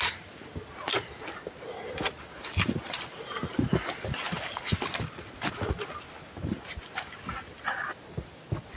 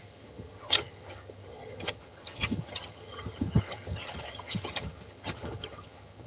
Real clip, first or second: first